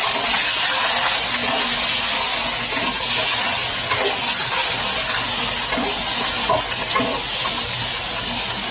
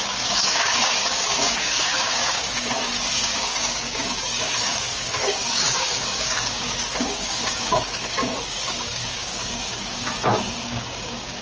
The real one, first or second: first